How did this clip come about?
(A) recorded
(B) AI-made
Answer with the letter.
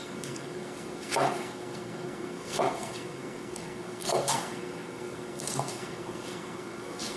B